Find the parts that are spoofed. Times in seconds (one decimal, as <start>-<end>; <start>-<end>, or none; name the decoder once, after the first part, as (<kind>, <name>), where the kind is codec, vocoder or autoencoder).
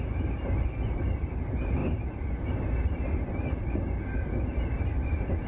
none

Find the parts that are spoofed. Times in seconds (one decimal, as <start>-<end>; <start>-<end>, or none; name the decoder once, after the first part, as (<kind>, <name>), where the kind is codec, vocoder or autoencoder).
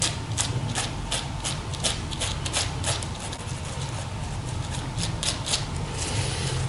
none